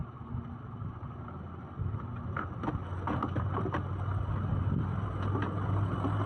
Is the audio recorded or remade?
recorded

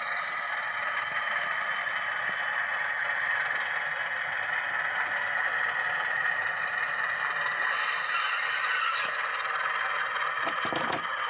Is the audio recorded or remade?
recorded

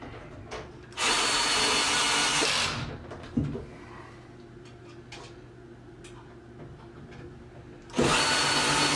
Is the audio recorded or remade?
recorded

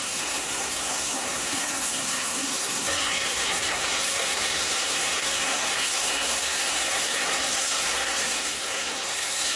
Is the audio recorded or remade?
remade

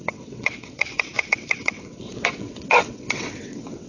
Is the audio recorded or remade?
remade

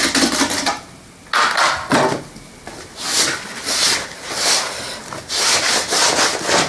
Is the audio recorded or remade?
recorded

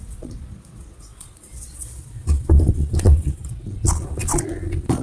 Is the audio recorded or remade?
remade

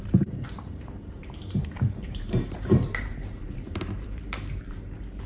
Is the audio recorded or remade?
remade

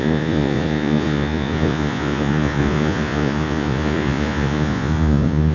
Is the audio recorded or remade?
remade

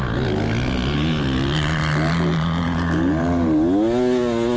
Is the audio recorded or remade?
recorded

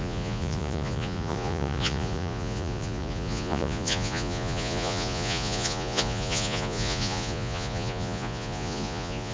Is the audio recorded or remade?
remade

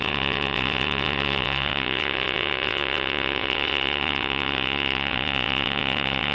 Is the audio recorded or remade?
remade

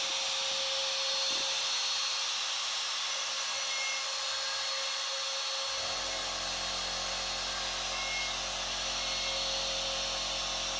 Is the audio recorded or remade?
recorded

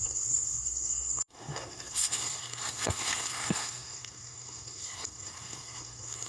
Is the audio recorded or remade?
remade